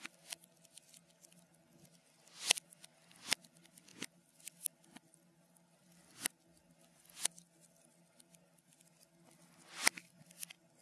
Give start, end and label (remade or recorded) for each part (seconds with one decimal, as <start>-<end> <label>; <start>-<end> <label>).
0.0-10.8 recorded